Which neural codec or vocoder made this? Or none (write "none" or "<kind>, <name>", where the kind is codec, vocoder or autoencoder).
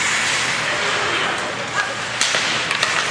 none